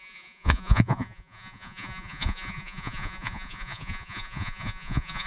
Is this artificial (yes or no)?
yes